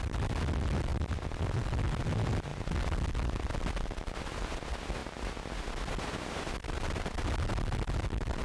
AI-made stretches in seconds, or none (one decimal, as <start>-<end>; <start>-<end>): none